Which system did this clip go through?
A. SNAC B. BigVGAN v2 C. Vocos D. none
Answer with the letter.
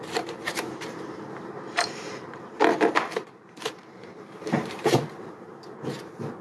B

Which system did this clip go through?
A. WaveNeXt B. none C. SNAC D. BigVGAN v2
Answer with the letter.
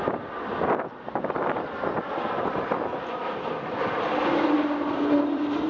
B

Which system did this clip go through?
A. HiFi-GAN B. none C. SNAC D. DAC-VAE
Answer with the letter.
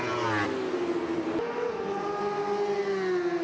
B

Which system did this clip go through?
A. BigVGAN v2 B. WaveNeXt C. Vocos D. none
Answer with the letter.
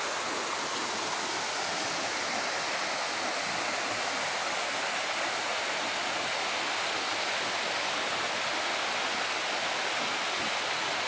D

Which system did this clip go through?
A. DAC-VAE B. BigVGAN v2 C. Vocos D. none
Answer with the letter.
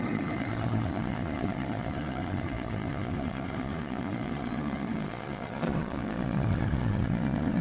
C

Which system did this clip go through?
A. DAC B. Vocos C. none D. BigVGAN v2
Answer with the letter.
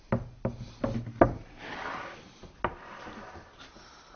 C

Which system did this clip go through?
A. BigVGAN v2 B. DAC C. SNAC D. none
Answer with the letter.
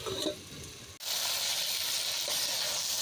D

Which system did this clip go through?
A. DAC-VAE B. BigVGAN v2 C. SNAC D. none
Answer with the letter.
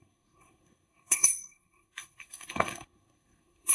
C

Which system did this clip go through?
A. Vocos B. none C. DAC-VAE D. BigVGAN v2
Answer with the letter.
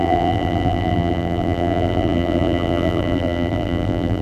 D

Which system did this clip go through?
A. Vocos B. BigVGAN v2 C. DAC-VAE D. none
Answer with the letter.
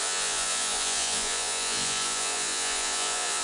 A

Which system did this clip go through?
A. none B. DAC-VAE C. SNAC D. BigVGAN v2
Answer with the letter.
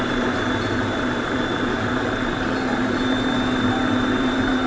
D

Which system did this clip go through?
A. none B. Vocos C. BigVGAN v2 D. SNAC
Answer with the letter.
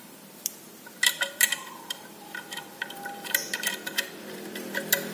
C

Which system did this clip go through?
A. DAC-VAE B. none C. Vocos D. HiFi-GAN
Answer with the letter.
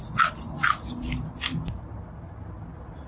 B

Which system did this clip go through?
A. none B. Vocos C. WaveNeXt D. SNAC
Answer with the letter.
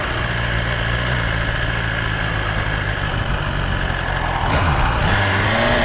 A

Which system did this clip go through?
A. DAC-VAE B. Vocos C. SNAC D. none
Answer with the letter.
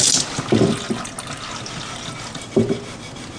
D